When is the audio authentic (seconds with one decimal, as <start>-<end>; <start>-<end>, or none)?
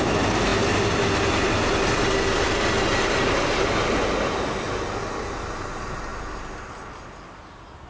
0.0-7.9